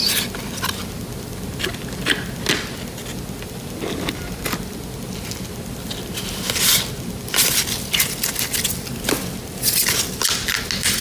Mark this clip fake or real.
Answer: real